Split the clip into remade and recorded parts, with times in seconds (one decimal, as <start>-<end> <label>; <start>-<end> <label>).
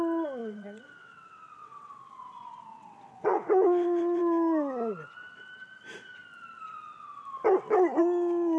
0.0-0.4 recorded; 0.4-4.2 remade; 4.2-8.6 recorded